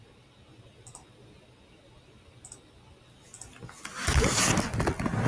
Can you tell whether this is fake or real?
real